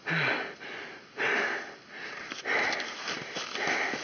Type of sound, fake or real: real